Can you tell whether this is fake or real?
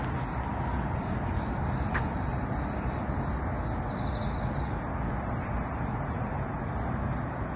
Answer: real